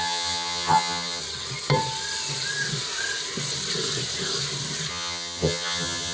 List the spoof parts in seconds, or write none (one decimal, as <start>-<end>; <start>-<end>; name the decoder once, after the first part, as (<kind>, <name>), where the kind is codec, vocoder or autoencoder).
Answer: 0.0-1.2 (vocoder, HiFi-GAN); 4.9-6.1